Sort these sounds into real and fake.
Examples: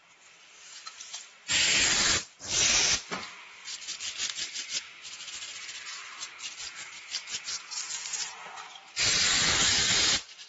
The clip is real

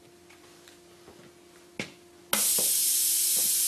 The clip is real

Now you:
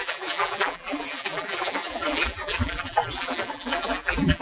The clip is fake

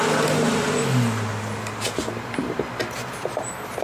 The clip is real